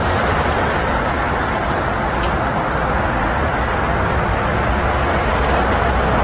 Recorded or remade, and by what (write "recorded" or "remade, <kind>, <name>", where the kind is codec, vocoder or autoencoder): recorded